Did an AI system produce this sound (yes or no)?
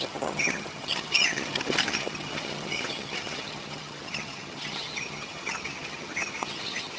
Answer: yes